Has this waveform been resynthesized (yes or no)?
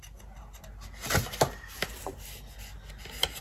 no